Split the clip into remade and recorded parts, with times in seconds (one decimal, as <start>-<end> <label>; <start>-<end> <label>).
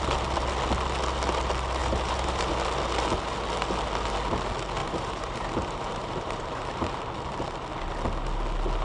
0.0-1.8 recorded; 1.8-2.5 remade; 2.5-4.8 recorded; 4.8-7.0 remade; 7.0-8.8 recorded